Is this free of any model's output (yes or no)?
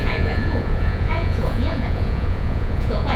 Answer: no